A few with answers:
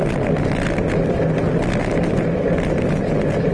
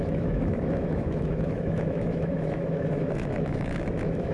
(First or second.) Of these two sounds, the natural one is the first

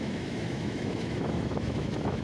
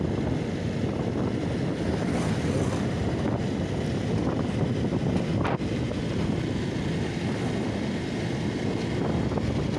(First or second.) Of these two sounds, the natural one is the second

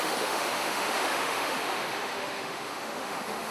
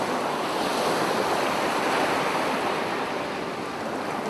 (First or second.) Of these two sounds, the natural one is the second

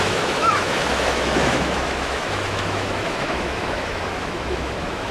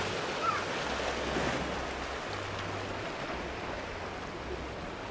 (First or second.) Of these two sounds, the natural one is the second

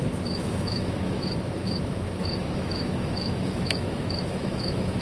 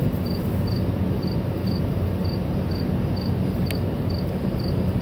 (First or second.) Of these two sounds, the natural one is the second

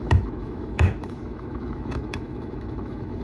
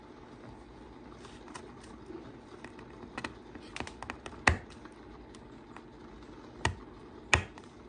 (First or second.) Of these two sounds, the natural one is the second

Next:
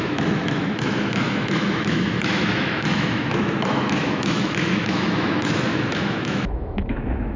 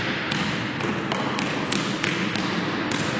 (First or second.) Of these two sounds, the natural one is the second